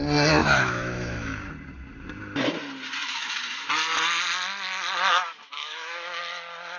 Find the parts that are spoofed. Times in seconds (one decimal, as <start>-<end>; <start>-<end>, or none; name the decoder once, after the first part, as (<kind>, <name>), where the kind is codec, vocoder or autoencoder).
0.4-1.5 (autoencoder, DAC-VAE); 3.0-3.7; 5.1-6.2